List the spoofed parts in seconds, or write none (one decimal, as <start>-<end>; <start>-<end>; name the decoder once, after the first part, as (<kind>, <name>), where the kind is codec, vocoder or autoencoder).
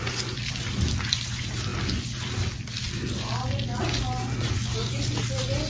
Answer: none